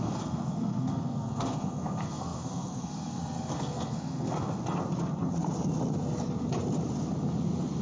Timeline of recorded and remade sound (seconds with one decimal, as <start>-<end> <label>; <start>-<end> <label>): 0.0-4.6 remade; 4.6-7.8 recorded